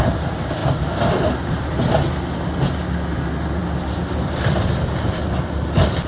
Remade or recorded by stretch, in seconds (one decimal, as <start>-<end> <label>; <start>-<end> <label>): 0.0-6.1 recorded